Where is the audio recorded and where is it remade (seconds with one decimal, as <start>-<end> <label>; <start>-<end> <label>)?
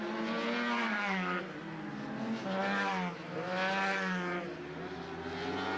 0.0-0.8 recorded; 0.8-1.4 remade; 1.4-5.8 recorded